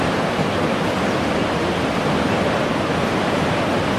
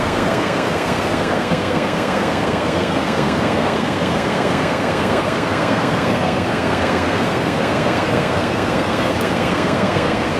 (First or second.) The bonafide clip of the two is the first